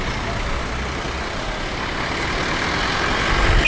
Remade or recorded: recorded